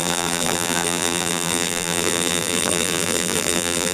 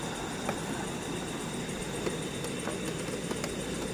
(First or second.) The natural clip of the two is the second